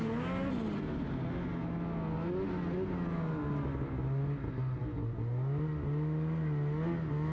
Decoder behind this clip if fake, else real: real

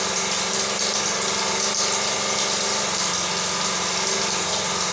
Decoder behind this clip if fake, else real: real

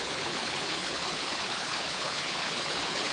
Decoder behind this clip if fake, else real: fake, codec, HILCodec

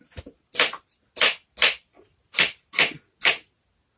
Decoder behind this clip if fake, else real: real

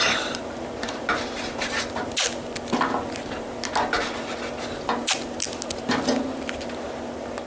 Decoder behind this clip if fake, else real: real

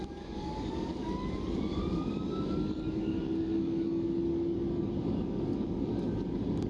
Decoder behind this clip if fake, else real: fake, codec, DAC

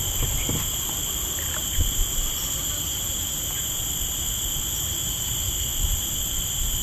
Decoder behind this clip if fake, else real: real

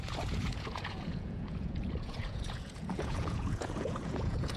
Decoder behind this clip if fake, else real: fake, vocoder, Vocos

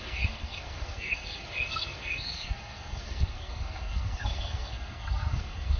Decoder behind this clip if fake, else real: fake, codec, SNAC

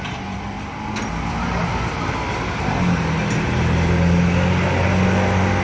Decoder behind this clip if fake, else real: real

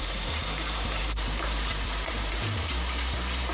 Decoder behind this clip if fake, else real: fake, vocoder, BigVGAN v2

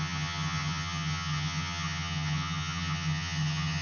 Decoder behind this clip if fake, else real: fake, vocoder, HiFi-GAN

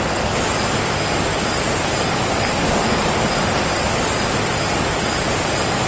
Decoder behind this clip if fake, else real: real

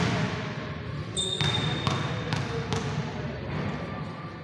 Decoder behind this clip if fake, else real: real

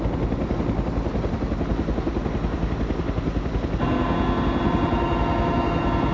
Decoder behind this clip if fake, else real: real